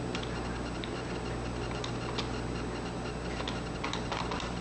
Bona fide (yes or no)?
yes